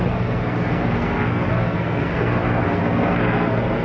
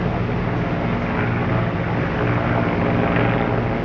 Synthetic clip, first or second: first